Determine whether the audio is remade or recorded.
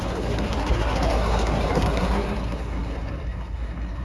remade